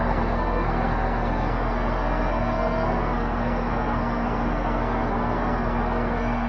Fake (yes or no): yes